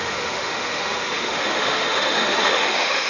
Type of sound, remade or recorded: remade